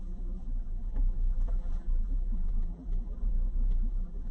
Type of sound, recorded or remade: remade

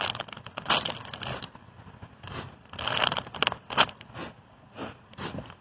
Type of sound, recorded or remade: recorded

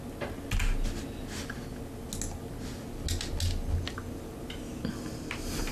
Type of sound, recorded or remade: recorded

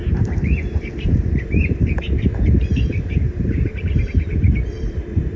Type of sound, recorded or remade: remade